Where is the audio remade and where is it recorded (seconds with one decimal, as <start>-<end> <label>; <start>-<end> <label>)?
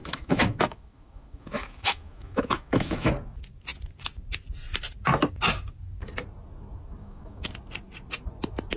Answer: 0.0-3.1 remade; 3.1-7.0 recorded; 7.0-7.5 remade; 7.5-8.8 recorded